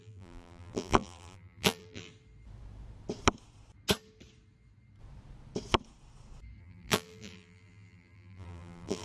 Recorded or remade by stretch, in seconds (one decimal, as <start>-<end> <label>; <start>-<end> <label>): 0.0-2.1 remade; 2.1-6.6 recorded; 6.6-9.0 remade